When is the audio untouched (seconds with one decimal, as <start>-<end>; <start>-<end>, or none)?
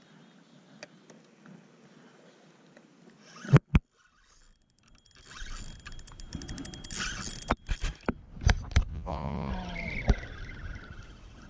0.0-8.9; 9.5-11.5